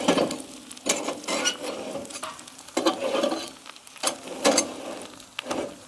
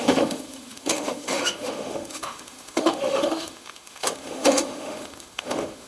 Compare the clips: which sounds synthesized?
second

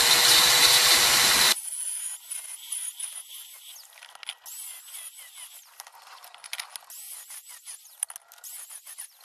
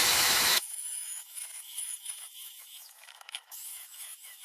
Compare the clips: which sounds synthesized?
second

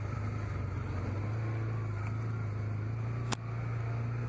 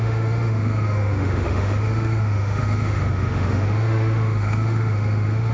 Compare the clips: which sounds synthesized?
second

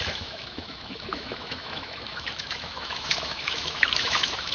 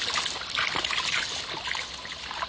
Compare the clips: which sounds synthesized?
first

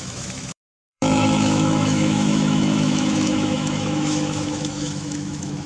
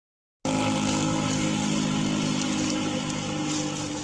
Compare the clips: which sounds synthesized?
first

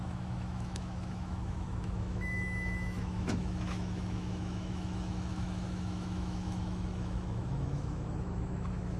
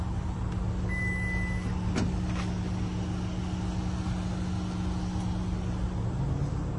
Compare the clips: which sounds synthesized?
first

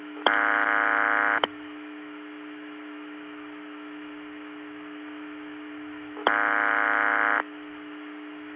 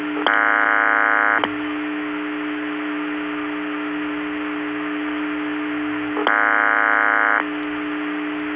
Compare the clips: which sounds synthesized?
first